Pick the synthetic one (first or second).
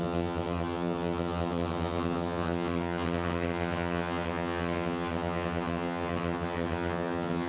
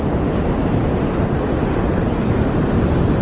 first